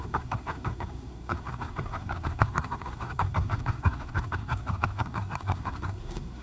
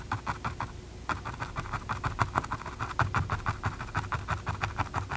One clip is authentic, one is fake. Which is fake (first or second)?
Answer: first